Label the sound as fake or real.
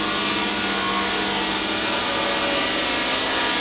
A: real